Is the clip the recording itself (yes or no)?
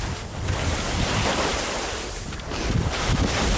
no